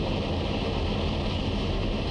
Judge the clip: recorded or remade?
recorded